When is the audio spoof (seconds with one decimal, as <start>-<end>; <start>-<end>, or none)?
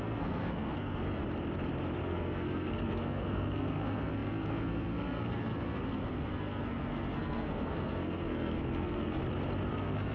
0.0-1.2; 2.0-9.2; 9.7-10.1